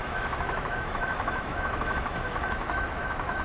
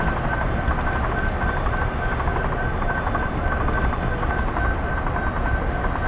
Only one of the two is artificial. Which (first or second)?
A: first